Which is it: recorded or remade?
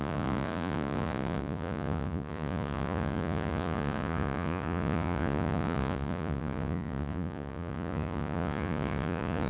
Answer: remade